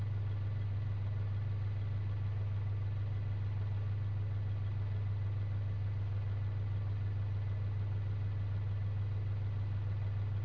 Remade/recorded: recorded